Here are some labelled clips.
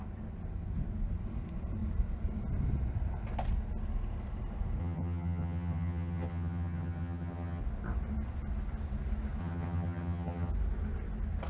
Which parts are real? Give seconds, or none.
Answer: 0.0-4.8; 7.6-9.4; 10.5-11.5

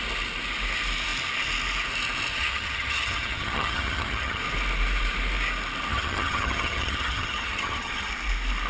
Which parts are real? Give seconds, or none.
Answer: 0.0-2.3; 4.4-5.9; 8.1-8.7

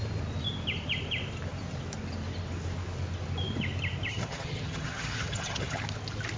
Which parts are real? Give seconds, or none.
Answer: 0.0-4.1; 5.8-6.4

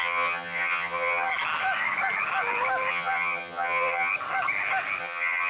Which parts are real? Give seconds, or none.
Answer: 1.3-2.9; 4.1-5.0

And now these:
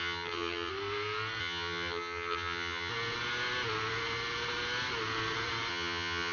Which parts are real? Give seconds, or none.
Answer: 0.7-1.4; 2.9-5.7